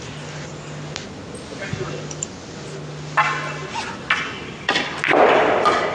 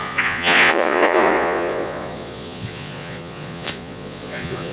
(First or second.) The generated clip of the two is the second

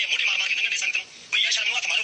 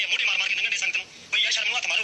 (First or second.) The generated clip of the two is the first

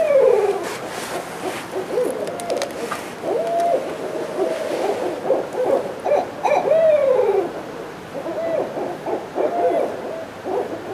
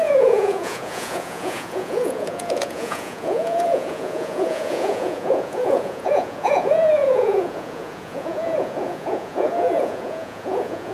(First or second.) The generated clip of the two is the second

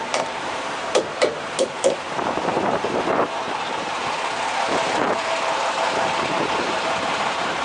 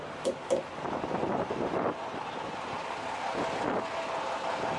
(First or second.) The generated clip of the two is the first